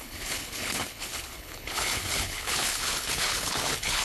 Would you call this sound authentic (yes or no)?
no